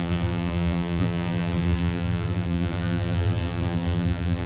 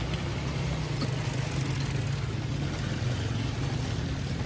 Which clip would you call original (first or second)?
second